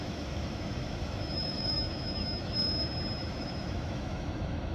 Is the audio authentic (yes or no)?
no